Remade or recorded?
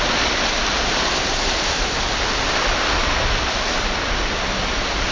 recorded